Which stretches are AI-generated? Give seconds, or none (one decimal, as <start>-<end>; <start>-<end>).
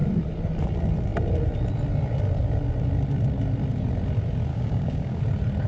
4.5-5.2